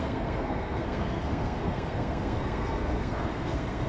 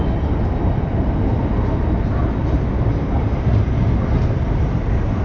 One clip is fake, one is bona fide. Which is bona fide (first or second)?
second